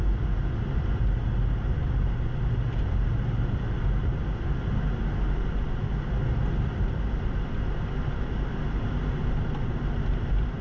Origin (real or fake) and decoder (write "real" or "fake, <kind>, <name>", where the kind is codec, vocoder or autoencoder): real